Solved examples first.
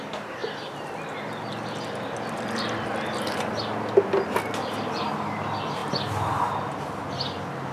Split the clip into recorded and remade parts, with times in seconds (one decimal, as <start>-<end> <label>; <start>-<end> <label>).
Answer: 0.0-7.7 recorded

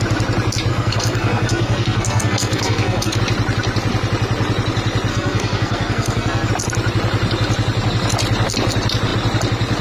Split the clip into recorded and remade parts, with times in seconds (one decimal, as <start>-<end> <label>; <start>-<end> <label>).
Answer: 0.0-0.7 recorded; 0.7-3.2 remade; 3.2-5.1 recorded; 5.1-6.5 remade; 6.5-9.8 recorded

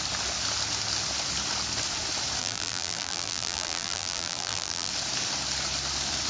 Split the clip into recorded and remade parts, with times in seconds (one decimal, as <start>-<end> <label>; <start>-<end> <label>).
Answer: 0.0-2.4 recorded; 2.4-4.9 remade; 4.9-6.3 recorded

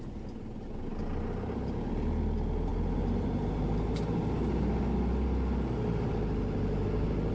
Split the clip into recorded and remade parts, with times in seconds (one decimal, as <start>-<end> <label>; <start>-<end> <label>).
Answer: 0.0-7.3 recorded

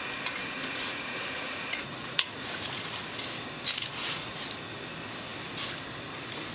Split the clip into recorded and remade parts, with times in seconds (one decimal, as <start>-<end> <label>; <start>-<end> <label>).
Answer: 0.0-0.4 recorded; 0.4-2.8 remade; 2.8-4.0 recorded; 4.0-4.5 remade; 4.5-6.5 recorded

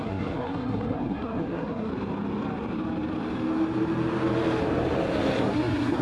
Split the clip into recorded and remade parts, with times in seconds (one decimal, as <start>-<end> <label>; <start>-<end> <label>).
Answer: 0.0-1.9 remade; 1.9-5.5 recorded; 5.5-6.0 remade

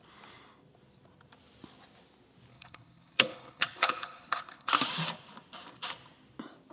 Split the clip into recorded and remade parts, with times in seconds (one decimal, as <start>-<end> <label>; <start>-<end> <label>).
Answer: 0.0-2.5 recorded; 2.5-4.7 remade; 4.7-6.7 recorded

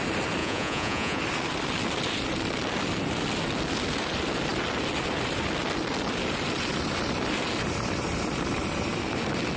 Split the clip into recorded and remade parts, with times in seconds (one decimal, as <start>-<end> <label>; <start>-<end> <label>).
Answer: 0.0-0.4 recorded; 0.4-1.2 remade; 1.2-9.6 recorded